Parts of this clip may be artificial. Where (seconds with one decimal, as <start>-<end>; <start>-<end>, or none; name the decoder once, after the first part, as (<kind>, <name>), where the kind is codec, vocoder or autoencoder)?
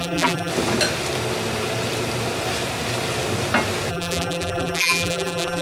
0.0-0.5 (vocoder, BigVGAN v2); 3.9-5.6